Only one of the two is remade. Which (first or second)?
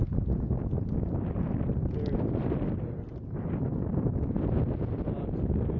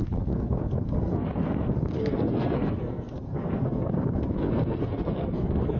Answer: second